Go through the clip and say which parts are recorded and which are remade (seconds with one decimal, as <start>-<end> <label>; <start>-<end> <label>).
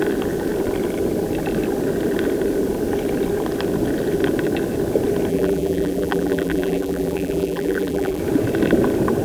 0.0-5.3 recorded; 5.3-8.2 remade; 8.2-9.2 recorded